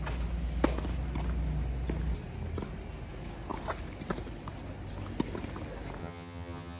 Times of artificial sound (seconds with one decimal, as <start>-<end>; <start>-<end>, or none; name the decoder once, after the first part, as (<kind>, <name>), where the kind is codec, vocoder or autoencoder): 6.0-6.8 (vocoder, HiFi-GAN)